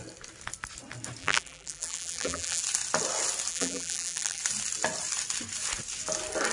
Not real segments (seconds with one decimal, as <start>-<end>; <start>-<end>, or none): 1.2-2.6; 3.5-4.4